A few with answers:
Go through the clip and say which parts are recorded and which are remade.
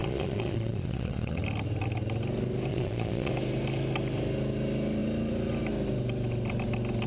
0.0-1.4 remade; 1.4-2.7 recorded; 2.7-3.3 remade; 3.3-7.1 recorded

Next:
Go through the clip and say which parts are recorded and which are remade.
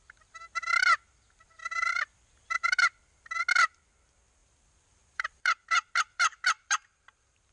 0.0-1.6 recorded; 1.6-2.7 remade; 2.7-4.4 recorded; 4.4-7.5 remade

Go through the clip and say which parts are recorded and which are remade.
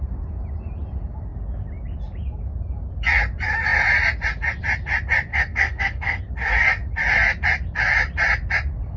0.0-5.3 recorded; 5.3-6.2 remade; 6.2-9.0 recorded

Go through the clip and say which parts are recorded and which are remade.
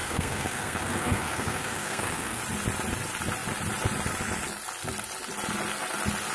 0.0-2.4 remade; 2.4-6.3 recorded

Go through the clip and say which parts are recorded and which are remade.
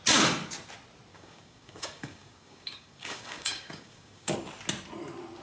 0.0-1.1 recorded; 1.1-4.3 remade; 4.3-5.4 recorded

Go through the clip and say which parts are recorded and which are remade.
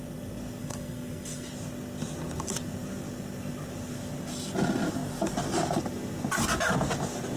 0.0-0.6 recorded; 0.6-1.5 remade; 1.5-7.4 recorded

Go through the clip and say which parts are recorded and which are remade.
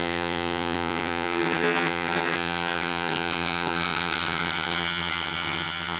0.0-6.0 remade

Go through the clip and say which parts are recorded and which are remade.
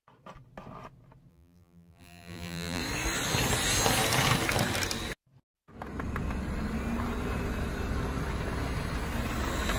0.0-1.3 recorded; 1.3-2.8 remade; 2.8-9.8 recorded